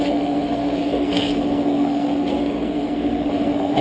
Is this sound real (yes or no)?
no